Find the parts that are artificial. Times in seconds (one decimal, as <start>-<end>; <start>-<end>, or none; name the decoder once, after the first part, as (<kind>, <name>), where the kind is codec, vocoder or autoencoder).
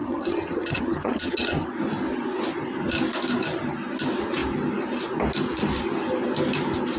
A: 0.0-1.7 (vocoder, HiFi-GAN)